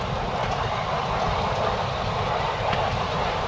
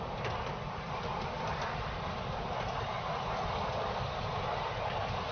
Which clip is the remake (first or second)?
first